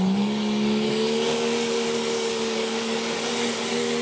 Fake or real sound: fake